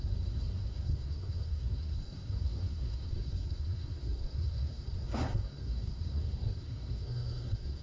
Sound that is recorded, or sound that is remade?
remade